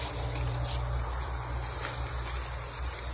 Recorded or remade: recorded